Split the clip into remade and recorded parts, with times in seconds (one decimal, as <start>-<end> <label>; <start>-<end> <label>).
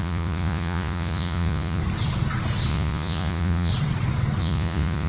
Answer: 0.0-1.8 remade; 1.8-2.7 recorded; 2.7-3.7 remade; 3.7-4.4 recorded; 4.4-5.1 remade